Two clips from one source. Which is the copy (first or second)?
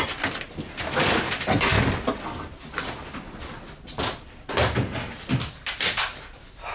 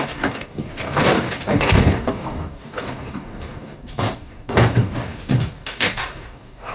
second